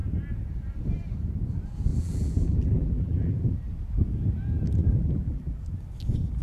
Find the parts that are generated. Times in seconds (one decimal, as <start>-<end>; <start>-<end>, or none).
1.9-3.5; 4.8-5.6